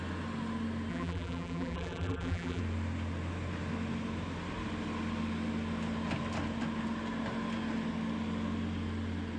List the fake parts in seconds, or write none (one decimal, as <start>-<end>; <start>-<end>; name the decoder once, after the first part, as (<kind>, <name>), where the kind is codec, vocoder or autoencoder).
0.9-2.6 (vocoder, BigVGAN v2)